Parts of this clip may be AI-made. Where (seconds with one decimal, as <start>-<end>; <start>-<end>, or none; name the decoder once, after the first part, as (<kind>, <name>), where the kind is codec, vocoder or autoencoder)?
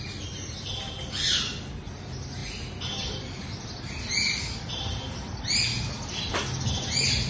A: none